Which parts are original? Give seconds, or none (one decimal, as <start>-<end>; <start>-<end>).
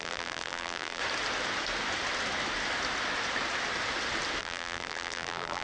1.0-4.4